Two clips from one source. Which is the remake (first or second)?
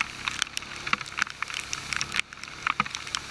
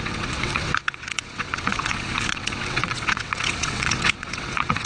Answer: second